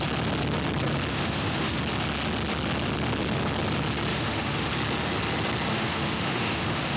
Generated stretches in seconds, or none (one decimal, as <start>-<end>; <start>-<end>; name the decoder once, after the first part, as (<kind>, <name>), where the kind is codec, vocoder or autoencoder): 1.1-1.8 (autoencoder, DAC-VAE); 4.1-4.7; 5.7-7.0